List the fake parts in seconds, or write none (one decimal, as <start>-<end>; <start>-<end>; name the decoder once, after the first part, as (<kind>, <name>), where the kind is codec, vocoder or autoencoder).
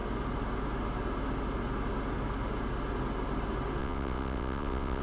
3.8-5.0 (vocoder, WaveNeXt)